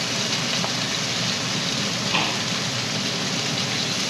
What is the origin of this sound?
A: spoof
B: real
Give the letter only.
B